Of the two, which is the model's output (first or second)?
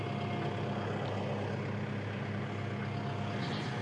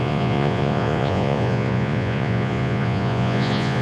second